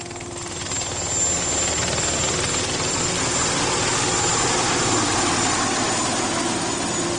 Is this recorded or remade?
recorded